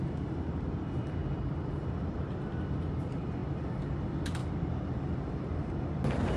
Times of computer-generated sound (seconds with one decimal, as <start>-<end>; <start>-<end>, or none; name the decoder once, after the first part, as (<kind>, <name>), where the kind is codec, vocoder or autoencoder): none